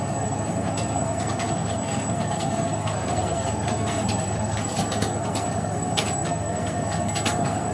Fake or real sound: fake